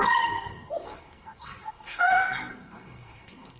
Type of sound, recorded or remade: remade